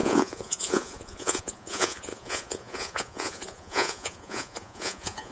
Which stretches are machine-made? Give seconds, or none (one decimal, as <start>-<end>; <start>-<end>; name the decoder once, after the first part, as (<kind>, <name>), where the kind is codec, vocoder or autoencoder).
0.0-5.3 (vocoder, Vocos)